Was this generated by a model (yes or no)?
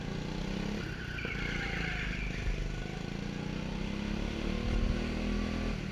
no